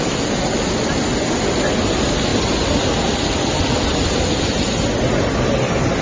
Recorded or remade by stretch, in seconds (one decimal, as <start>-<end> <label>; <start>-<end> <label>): 0.0-6.0 recorded